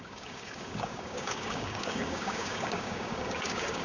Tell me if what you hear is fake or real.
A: fake